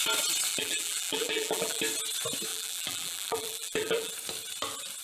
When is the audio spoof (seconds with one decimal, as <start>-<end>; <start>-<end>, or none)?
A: 0.5-1.8; 2.5-4.1